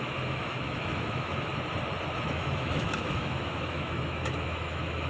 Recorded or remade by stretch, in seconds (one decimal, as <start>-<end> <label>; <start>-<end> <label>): 0.0-1.5 remade; 1.5-2.2 recorded; 2.2-5.1 remade